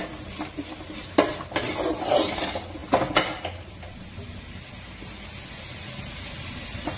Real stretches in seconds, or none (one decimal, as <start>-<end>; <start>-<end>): 0.0-7.0